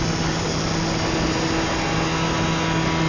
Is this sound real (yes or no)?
yes